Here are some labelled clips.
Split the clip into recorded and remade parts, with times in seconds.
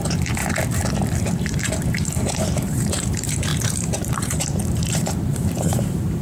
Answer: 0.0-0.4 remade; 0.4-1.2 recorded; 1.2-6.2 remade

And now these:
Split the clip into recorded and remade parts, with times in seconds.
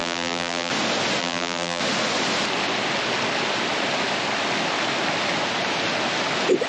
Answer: 0.0-0.7 remade; 0.7-1.2 recorded; 1.2-1.8 remade; 1.8-6.7 recorded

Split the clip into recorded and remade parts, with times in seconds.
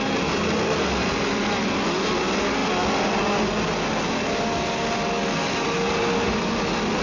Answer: 0.0-7.0 recorded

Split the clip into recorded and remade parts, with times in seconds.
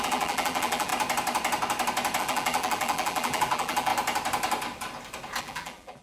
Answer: 0.0-0.9 remade; 0.9-2.2 recorded; 2.2-3.9 remade; 3.9-5.4 recorded; 5.4-6.0 remade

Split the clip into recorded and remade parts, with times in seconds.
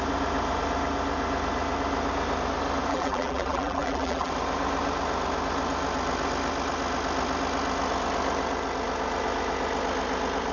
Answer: 0.0-2.9 recorded; 2.9-4.3 remade; 4.3-10.5 recorded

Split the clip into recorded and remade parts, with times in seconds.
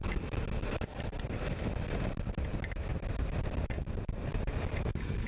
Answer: 0.0-5.3 recorded